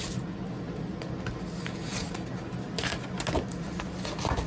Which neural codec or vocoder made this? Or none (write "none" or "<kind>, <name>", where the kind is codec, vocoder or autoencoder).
none